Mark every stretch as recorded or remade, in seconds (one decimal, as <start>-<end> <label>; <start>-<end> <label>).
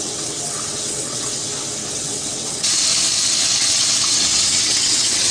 0.0-1.4 remade; 1.4-1.9 recorded; 1.9-2.9 remade; 2.9-3.6 recorded; 3.6-5.3 remade